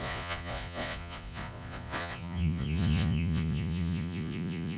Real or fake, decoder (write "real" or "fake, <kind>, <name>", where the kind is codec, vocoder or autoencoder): fake, vocoder, Vocos